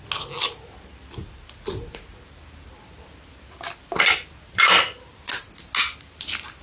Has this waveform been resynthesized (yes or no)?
no